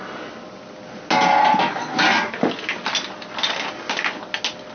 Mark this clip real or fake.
real